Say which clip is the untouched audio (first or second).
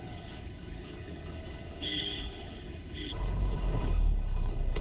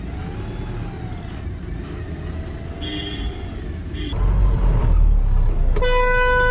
second